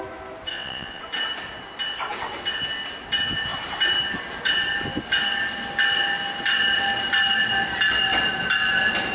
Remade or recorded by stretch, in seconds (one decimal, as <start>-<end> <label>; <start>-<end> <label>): 0.0-0.5 recorded; 0.5-1.0 remade; 1.0-9.1 recorded